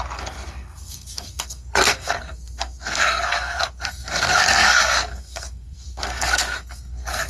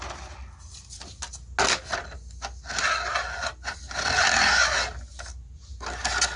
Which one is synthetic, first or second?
first